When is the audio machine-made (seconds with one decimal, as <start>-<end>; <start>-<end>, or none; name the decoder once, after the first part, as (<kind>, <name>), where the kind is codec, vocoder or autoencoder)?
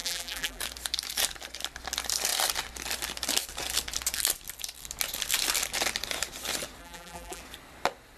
0.0-0.6 (vocoder, BigVGAN v2); 6.8-7.4